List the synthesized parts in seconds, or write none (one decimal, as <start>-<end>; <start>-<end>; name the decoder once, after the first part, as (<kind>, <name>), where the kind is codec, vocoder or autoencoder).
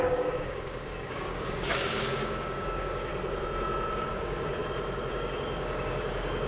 0.0-3.1 (codec, DAC); 4.1-4.6; 5.1-6.5